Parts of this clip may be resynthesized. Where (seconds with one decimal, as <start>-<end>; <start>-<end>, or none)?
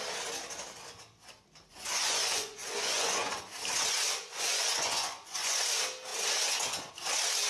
1.7-3.4; 4.3-5.6